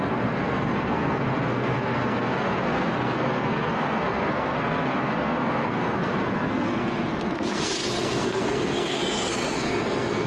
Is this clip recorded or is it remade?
remade